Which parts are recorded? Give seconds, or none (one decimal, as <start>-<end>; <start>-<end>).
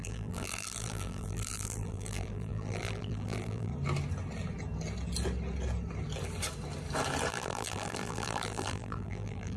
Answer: 3.7-7.3